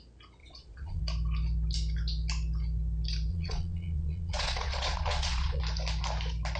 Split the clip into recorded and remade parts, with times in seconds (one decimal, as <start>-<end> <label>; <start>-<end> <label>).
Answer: 0.0-0.4 recorded; 0.4-1.0 remade; 1.0-3.3 recorded; 3.3-5.6 remade; 5.6-6.6 recorded